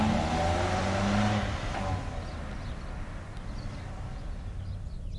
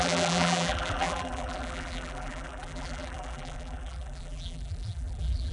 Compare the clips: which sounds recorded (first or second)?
first